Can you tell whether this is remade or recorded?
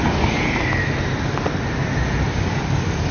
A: recorded